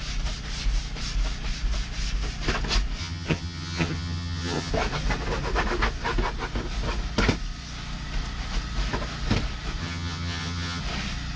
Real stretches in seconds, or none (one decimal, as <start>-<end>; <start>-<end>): 0.0-3.0; 4.7-9.8; 10.8-11.4

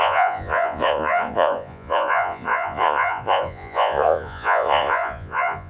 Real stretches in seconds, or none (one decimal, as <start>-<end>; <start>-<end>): none